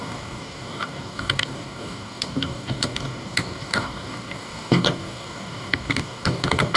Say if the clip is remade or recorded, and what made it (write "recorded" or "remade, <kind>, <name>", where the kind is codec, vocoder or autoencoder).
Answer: remade, codec, DAC